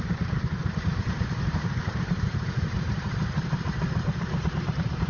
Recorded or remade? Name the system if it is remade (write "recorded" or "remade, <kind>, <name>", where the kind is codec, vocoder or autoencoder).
remade, vocoder, BigVGAN v2